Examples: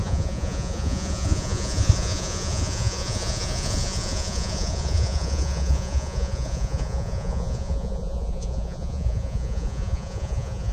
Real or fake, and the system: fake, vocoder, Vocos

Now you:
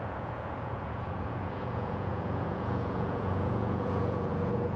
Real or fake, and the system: fake, vocoder, Vocos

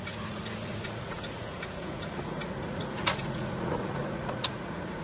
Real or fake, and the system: fake, vocoder, Vocos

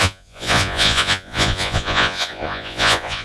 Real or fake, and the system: fake, vocoder, Vocos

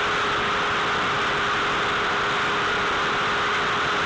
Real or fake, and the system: real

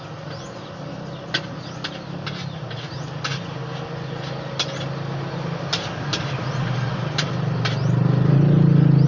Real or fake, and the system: real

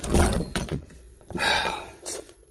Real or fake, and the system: fake, vocoder, Vocos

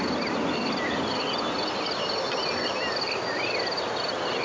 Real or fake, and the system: real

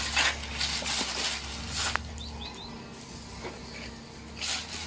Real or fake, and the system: real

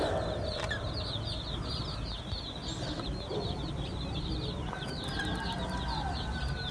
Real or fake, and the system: real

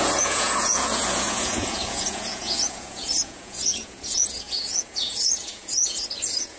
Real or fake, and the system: fake, vocoder, Vocos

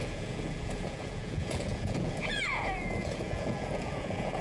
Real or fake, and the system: fake, vocoder, Vocos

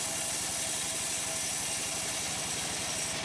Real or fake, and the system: real